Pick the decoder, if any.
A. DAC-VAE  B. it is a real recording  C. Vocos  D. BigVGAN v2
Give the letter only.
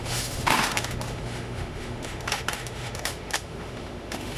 A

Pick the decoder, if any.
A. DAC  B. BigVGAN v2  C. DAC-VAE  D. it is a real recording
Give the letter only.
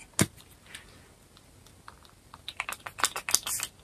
D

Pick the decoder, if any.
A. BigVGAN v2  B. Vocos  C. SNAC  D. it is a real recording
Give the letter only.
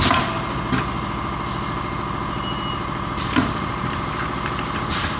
D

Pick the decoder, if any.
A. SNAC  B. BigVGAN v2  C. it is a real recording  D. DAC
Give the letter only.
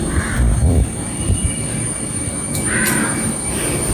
C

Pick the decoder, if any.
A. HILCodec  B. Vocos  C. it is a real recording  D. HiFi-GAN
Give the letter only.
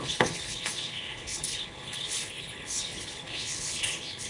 A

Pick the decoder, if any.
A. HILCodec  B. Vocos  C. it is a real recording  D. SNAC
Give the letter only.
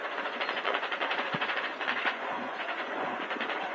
B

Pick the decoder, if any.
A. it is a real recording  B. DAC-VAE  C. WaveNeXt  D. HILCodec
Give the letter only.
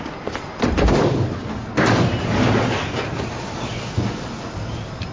A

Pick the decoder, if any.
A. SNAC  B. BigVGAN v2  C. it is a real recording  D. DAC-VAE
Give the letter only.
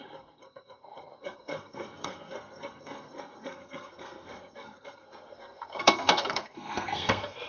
A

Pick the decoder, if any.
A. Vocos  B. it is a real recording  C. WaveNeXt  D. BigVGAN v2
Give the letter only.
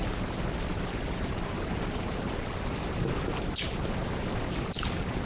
B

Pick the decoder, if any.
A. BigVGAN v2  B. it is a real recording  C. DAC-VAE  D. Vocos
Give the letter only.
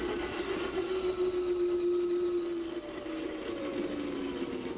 B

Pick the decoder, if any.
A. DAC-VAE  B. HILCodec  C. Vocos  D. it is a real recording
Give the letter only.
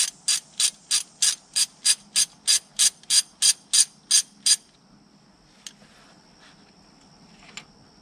D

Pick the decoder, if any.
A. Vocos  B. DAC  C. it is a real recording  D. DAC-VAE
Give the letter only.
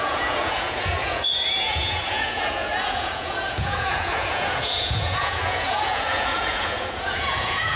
A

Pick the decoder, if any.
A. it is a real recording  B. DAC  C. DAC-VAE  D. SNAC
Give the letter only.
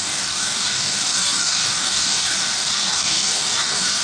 B